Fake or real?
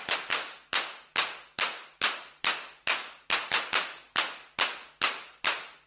real